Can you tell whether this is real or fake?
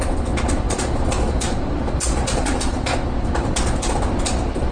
real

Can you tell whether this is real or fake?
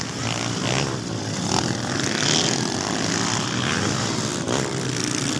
real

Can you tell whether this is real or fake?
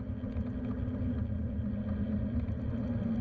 real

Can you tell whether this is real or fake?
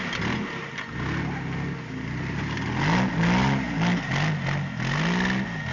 real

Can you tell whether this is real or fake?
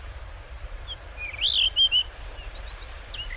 real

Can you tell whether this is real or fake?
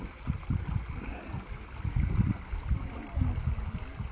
real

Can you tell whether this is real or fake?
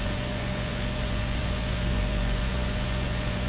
fake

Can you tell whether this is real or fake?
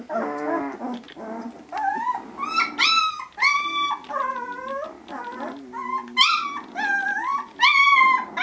real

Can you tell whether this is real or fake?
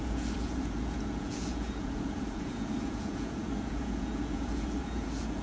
fake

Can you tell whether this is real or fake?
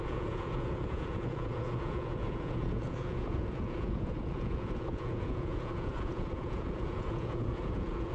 fake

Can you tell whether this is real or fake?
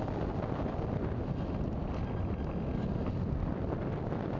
real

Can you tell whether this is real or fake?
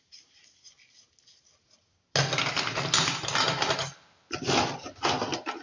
real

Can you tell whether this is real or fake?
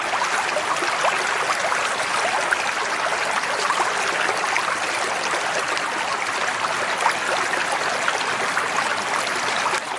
real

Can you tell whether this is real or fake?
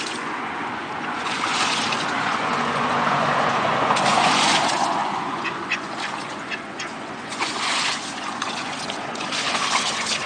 fake